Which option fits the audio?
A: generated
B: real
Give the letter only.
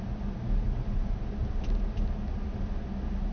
B